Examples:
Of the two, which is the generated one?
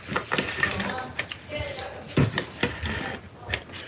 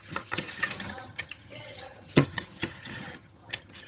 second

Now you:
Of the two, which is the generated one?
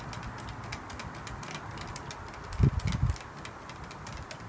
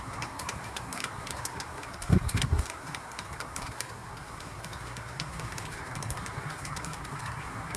second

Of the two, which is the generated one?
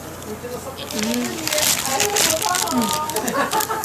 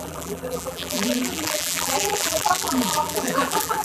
second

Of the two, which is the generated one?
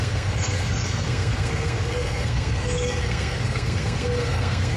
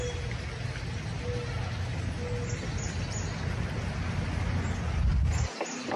first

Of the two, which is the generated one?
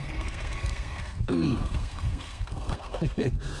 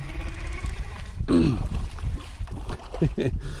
first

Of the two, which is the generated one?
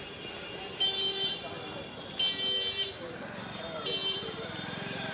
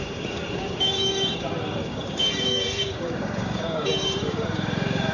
second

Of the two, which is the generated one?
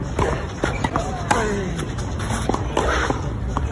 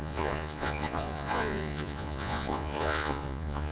second